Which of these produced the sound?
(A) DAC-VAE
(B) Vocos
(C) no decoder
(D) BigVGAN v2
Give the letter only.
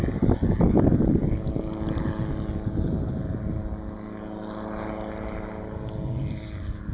C